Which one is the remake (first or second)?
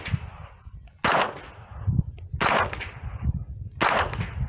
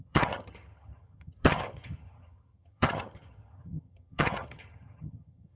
second